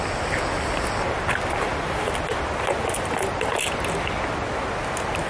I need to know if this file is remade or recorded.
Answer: recorded